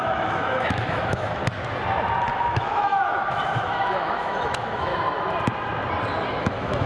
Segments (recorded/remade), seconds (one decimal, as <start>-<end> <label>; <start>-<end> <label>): 0.0-1.4 remade; 1.4-2.3 recorded; 2.3-4.9 remade; 4.9-6.4 recorded; 6.4-6.9 remade